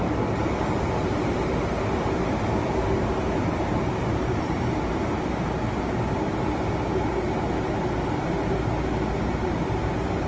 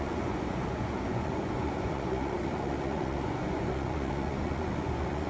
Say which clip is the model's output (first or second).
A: second